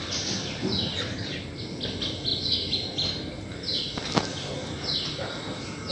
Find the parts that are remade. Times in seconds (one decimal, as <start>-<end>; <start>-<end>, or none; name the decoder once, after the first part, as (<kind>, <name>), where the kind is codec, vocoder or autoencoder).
2.3-5.9 (vocoder, BigVGAN v2)